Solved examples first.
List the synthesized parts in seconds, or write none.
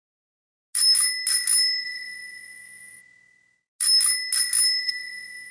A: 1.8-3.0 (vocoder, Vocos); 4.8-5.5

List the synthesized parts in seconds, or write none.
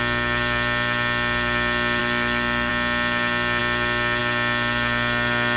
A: 2.0-2.7 (autoencoder, DAC-VAE)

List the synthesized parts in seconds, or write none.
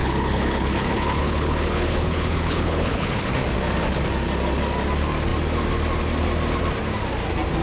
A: 0.0-3.3 (codec, HILCodec)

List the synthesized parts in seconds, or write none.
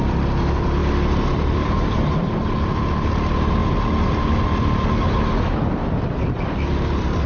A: none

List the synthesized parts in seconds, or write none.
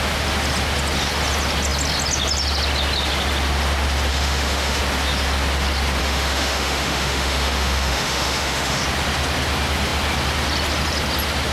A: 4.1-4.8 (autoencoder, DAC-VAE); 6.0-8.8